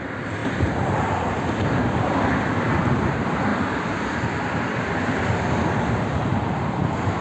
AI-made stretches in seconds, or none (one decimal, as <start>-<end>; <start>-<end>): 0.0-7.2

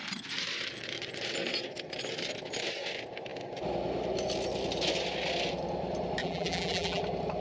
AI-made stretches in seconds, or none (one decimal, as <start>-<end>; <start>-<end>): 6.2-7.0

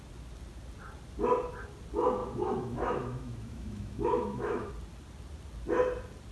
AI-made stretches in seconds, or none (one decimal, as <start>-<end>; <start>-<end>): 2.2-4.7

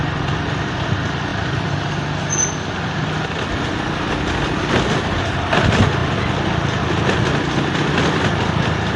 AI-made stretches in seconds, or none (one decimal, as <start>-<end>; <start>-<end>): none